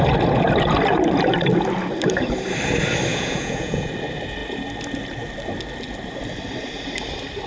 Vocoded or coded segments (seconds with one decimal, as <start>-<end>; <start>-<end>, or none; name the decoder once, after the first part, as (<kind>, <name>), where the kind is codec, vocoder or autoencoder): 3.1-3.9 (vocoder, Vocos)

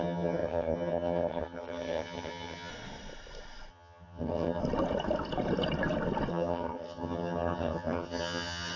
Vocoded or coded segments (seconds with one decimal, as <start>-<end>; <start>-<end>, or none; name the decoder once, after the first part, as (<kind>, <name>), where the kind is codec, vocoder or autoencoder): 0.0-2.7 (vocoder, HiFi-GAN); 3.7-4.6; 6.3-8.8